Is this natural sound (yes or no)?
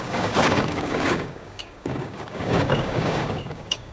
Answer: no